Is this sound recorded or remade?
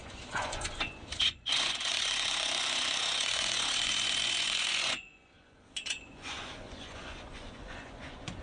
remade